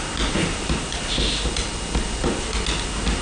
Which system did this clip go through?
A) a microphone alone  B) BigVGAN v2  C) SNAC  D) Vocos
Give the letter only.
A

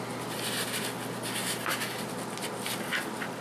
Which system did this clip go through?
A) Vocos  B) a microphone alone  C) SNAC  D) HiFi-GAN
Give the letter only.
B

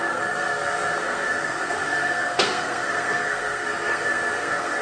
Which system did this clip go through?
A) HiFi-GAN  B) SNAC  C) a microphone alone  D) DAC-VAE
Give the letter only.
B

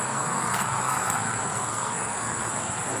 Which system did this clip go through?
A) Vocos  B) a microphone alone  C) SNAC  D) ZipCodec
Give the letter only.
C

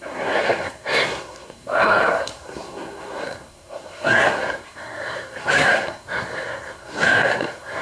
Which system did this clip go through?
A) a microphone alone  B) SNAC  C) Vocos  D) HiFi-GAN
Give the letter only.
B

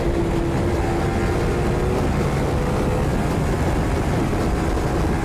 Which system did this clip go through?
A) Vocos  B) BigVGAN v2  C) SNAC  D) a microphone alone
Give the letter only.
D